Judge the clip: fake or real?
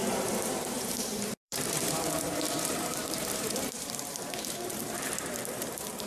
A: fake